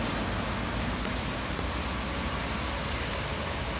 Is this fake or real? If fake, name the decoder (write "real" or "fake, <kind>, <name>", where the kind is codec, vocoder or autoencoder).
real